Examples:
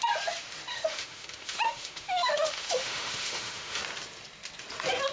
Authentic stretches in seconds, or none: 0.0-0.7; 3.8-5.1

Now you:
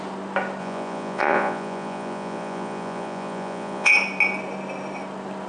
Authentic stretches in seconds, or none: 0.0-0.6; 3.9-5.5

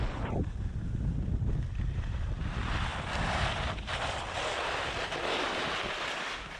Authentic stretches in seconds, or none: 0.0-6.6

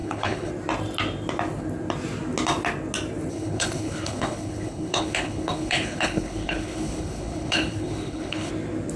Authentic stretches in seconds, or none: 0.5-3.3; 8.5-9.0